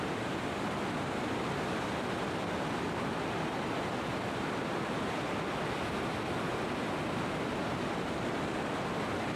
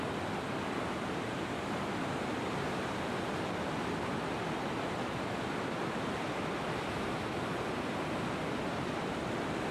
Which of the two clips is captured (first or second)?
first